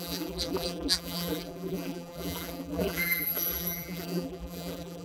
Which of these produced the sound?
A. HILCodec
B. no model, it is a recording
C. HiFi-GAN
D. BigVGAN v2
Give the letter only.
D